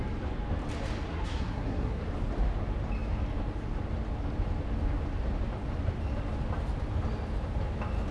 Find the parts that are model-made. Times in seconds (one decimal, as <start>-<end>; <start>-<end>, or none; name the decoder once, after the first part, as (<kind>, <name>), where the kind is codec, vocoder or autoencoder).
1.1-2.0 (codec, SNAC)